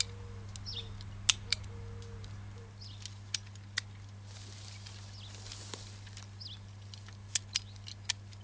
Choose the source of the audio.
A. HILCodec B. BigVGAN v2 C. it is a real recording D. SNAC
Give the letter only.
C